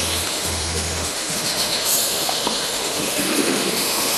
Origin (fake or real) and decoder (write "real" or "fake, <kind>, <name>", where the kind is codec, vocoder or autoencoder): fake, autoencoder, DAC-VAE